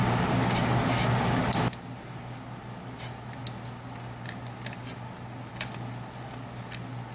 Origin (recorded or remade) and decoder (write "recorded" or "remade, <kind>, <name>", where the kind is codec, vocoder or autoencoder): recorded